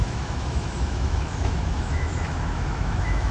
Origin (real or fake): fake